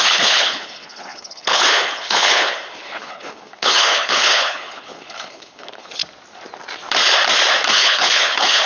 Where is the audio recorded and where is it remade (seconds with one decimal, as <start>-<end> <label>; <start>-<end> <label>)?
0.0-6.0 remade; 6.0-7.7 recorded; 7.7-8.7 remade